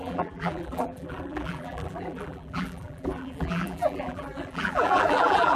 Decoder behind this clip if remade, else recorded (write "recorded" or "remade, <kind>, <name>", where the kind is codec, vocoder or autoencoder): remade, vocoder, BigVGAN v2